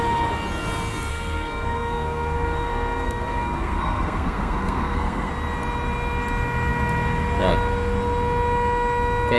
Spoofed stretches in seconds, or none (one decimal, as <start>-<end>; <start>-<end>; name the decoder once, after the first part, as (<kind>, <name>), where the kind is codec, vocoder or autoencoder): 1.1-5.3 (codec, SNAC)